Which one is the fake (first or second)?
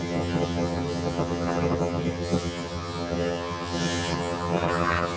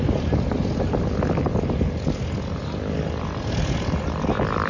first